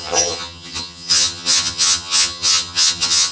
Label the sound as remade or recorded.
remade